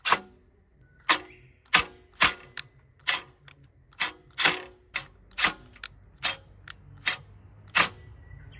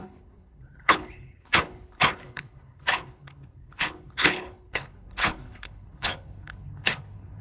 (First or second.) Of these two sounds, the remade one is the second